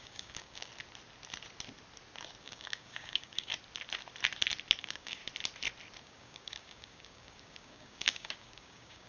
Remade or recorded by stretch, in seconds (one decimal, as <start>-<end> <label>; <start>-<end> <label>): 0.0-0.7 remade; 0.7-2.4 recorded; 2.4-3.5 remade; 3.5-4.8 recorded; 4.8-5.2 remade; 5.2-6.0 recorded; 6.0-9.1 remade